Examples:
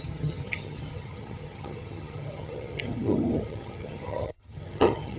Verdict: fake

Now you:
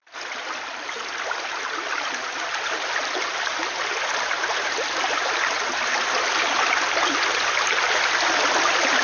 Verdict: real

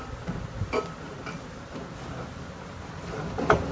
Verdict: real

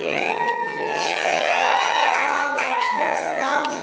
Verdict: fake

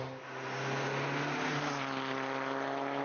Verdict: real